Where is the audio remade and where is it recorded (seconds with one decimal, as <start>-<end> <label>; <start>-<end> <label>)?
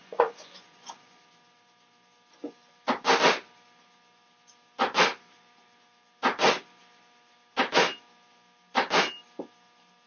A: 0.0-1.2 remade; 1.2-10.1 recorded